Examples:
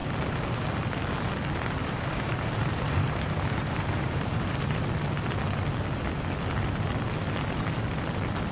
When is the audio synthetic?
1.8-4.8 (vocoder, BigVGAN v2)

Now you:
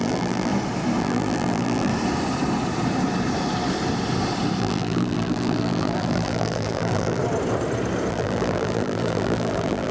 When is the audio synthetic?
0.0-0.5 (vocoder, BigVGAN v2); 1.0-1.9; 4.6-7.2; 8.1-9.9

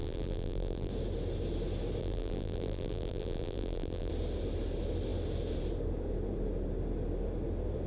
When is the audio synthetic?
0.0-0.9 (vocoder, BigVGAN v2); 2.0-4.1

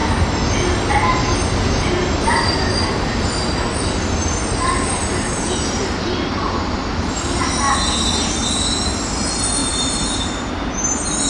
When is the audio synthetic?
9.6-10.5 (vocoder, BigVGAN v2)

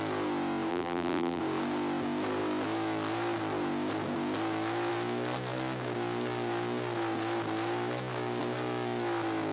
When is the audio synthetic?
0.7-1.4 (vocoder, BigVGAN v2)

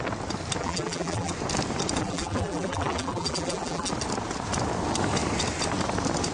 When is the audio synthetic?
0.6-1.3 (vocoder, BigVGAN v2); 2.0-3.9